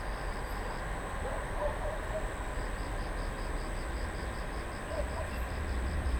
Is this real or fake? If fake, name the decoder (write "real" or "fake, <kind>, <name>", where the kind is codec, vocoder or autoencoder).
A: real